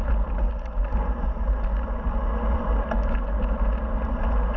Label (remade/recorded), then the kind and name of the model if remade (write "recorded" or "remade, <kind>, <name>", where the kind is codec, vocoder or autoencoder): recorded